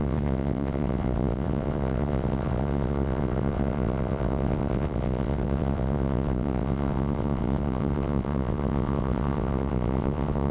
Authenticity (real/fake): fake